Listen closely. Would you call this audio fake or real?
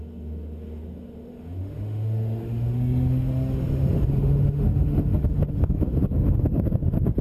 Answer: fake